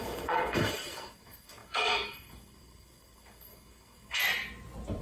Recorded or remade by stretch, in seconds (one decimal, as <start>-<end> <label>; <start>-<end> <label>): 0.0-4.2 remade; 4.2-5.0 recorded